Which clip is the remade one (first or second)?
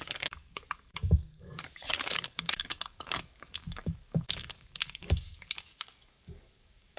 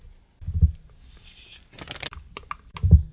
first